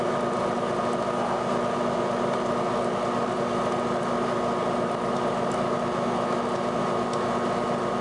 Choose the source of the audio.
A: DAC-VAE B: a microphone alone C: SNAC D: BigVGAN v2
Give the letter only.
B